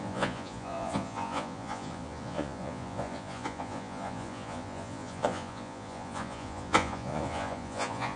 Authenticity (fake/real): fake